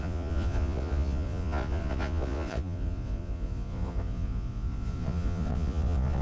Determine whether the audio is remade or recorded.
remade